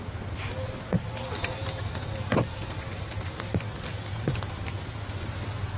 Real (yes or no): yes